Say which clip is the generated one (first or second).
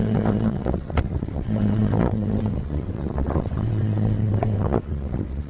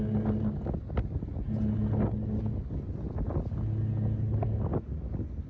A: first